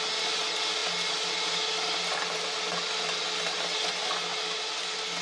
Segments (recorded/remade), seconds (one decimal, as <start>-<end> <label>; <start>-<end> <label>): 0.0-5.2 recorded